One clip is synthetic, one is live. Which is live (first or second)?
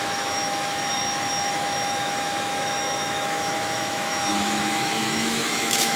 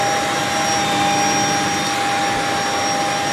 second